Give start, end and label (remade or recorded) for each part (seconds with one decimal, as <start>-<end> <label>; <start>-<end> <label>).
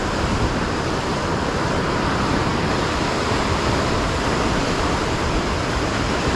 0.0-6.4 remade